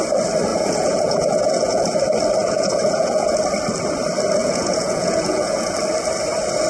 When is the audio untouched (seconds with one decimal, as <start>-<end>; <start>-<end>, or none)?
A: 0.0-0.5; 2.0-2.4; 3.4-4.4; 5.7-6.7